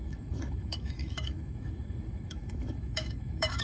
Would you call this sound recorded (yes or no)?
no